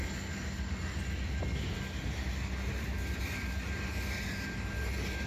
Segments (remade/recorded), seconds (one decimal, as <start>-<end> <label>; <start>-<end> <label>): 0.0-5.3 recorded